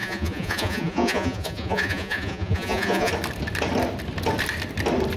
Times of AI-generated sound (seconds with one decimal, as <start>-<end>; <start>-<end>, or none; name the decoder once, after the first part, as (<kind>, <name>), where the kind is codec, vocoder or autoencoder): 0.0-3.1 (vocoder, Vocos)